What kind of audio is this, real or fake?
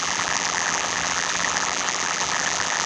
fake